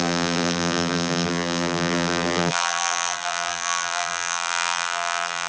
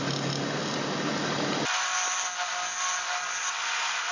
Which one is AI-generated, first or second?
first